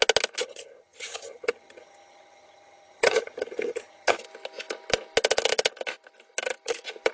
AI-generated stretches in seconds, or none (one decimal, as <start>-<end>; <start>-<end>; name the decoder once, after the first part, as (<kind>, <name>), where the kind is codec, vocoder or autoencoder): 0.4-4.2 (vocoder, HiFi-GAN)

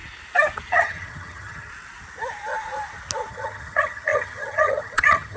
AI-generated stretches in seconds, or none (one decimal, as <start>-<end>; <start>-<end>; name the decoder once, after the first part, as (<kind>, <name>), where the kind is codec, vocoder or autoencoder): 0.7-1.7 (vocoder, HiFi-GAN); 3.3-5.4

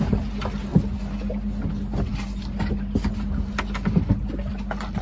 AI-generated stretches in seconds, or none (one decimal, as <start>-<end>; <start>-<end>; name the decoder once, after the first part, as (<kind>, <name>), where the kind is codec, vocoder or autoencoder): none

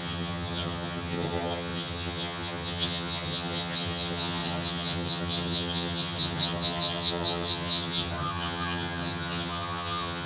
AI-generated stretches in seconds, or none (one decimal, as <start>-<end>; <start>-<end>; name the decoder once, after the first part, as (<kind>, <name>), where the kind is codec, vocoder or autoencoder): 0.0-10.3 (vocoder, HiFi-GAN)

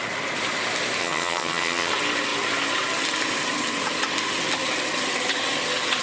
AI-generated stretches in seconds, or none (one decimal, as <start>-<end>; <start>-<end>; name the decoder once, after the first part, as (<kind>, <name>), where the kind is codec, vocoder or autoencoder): 1.0-1.9 (vocoder, HiFi-GAN)